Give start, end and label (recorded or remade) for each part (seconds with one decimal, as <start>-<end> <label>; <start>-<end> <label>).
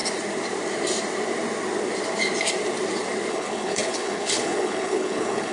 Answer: 0.0-3.3 recorded; 3.3-5.5 remade